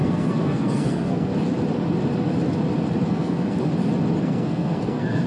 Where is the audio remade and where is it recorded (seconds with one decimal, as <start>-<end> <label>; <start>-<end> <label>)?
0.0-1.3 remade; 1.3-3.1 recorded; 3.1-3.7 remade; 3.7-4.2 recorded; 4.2-5.3 remade